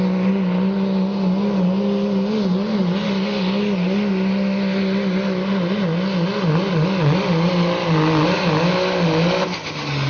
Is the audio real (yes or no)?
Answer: yes